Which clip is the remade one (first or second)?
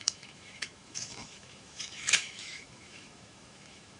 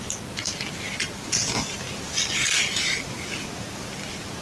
first